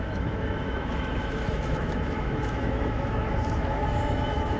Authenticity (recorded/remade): remade